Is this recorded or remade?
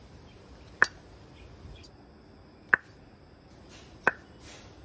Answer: recorded